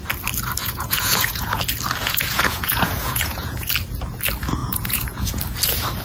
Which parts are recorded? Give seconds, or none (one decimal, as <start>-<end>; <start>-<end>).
0.0-0.6; 1.6-2.0; 3.7-4.6; 5.4-6.0